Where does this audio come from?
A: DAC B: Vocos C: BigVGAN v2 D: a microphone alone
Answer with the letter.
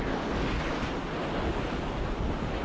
D